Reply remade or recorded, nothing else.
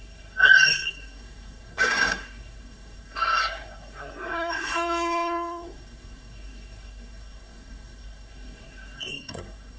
remade